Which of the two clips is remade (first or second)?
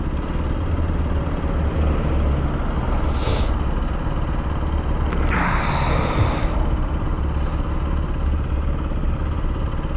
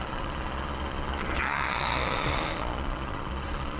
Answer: second